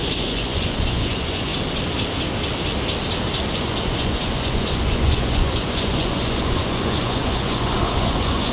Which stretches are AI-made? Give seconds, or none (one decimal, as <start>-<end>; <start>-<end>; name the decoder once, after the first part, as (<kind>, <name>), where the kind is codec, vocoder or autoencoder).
0.0-1.5 (vocoder, Vocos); 3.5-8.5